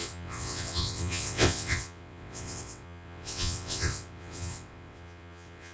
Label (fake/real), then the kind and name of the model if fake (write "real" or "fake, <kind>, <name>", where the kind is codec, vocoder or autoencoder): fake, vocoder, WaveNeXt